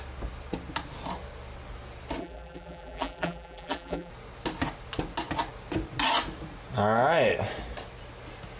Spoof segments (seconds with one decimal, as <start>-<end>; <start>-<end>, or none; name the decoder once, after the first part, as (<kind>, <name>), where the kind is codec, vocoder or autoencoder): 2.2-4.1 (vocoder, BigVGAN v2)

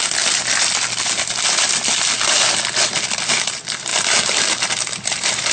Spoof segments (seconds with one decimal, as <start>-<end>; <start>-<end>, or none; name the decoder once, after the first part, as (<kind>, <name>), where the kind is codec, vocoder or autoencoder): 3.3-5.5 (vocoder, BigVGAN v2)